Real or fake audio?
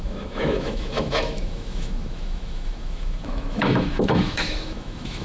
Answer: fake